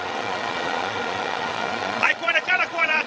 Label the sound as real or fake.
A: fake